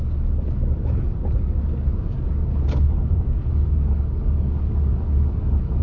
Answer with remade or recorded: remade